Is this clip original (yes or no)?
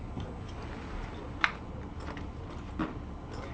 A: yes